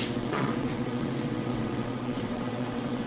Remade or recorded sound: remade